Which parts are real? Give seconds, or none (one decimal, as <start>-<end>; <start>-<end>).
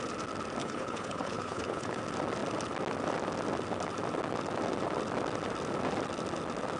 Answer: 0.0-0.6; 2.0-6.8